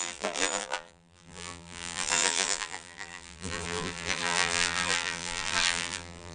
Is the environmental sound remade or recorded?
remade